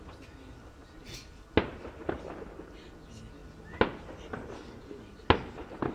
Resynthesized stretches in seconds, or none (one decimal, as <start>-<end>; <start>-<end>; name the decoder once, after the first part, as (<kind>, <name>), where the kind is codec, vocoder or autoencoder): none